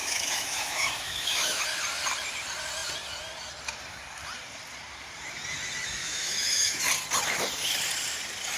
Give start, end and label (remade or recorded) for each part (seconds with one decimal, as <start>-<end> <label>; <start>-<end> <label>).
0.0-1.6 remade; 1.6-6.0 recorded; 6.0-6.8 remade; 6.8-8.6 recorded